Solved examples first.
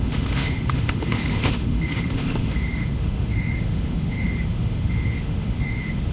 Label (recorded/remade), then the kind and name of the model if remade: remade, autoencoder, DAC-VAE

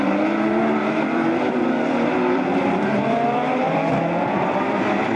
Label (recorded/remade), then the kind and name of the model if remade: remade, vocoder, BigVGAN v2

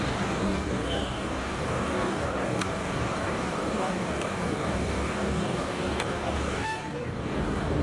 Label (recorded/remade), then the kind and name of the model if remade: remade, codec, DAC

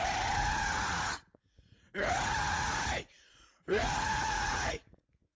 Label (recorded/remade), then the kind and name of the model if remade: remade, vocoder, Vocos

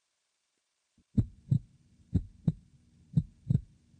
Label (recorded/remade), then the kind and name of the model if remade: remade, vocoder, BigVGAN v2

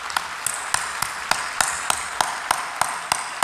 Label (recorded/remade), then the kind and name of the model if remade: recorded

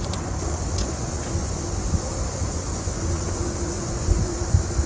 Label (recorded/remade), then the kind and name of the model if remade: remade, vocoder, Vocos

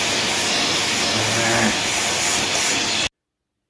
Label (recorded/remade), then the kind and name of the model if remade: recorded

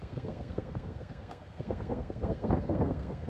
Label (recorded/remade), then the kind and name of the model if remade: remade, codec, SNAC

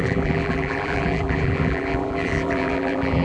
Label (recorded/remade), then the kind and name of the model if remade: remade, vocoder, BigVGAN v2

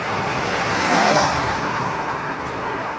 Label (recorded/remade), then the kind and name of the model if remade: remade, codec, SNAC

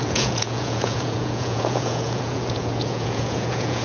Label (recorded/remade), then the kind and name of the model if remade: remade, vocoder, Vocos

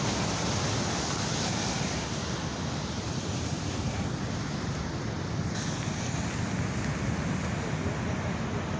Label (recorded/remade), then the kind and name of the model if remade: recorded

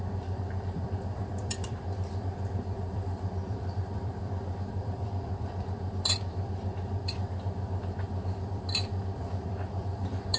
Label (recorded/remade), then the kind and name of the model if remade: remade, vocoder, BigVGAN v2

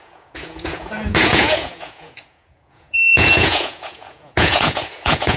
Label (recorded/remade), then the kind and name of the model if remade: remade, vocoder, Vocos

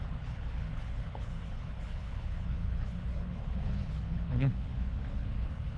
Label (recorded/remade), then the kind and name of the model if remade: remade, codec, HILCodec